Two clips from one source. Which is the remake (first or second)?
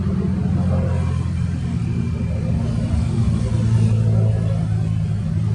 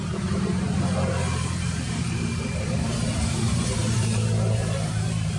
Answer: second